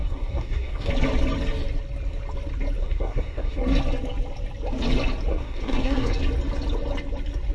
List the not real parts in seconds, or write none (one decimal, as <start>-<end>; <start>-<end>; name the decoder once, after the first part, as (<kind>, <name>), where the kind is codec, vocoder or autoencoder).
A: 0.0-0.9 (codec, SNAC); 2.8-3.6; 5.3-6.2